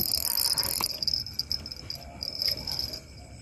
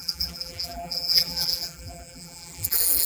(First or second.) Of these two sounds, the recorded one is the first